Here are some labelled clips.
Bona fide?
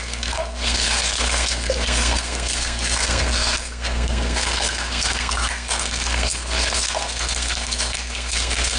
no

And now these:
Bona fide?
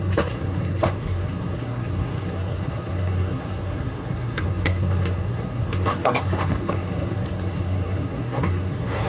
no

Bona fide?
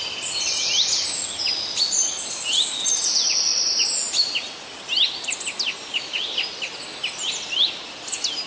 yes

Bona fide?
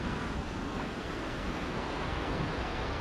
no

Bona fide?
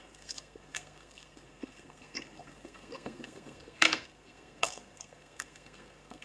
no